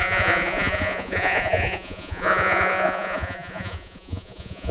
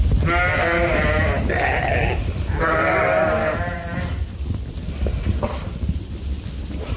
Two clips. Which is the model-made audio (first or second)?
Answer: first